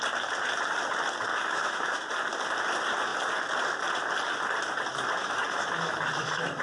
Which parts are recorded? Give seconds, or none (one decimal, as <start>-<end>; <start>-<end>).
0.0-1.3; 2.0-5.2

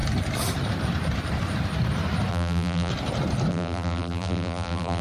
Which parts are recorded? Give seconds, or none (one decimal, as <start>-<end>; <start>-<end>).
0.0-2.3; 2.9-3.5